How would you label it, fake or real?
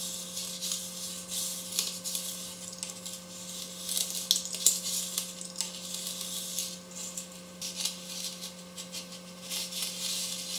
real